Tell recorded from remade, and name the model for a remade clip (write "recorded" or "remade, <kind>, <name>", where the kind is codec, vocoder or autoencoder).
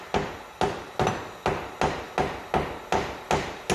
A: recorded